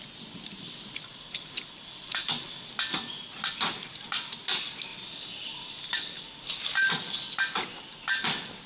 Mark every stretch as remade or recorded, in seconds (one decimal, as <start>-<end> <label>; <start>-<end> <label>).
0.0-2.9 recorded; 2.9-3.5 remade; 3.5-4.9 recorded; 4.9-6.8 remade; 6.8-8.7 recorded